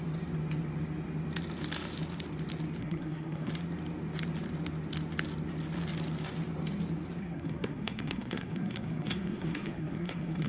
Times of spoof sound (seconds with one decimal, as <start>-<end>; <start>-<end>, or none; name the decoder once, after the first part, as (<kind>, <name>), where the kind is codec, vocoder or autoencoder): 2.8-3.5 (codec, SNAC); 7.2-10.5